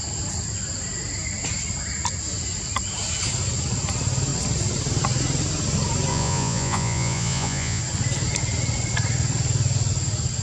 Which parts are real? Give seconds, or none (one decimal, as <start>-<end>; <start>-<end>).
0.0-6.1; 7.8-10.4